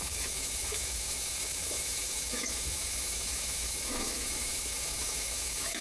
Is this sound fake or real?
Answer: fake